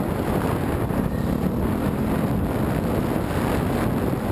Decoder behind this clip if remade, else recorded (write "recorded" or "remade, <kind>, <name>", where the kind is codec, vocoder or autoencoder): recorded